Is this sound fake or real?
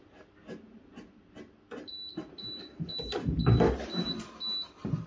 real